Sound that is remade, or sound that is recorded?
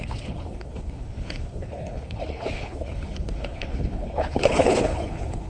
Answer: remade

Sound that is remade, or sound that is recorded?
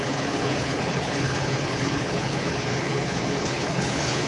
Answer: remade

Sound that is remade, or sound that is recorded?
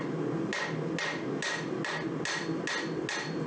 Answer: recorded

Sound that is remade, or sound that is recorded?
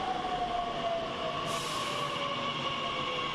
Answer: recorded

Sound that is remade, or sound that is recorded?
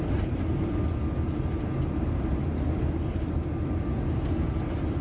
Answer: recorded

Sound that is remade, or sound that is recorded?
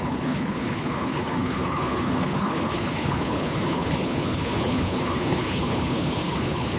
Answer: remade